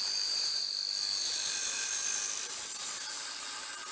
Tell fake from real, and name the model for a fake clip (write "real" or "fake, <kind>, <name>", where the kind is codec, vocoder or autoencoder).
real